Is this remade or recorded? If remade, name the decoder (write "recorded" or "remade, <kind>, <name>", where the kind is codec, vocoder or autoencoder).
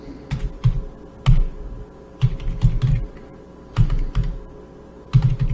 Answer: recorded